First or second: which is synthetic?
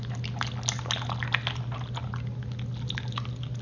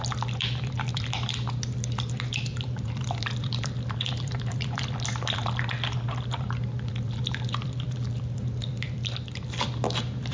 second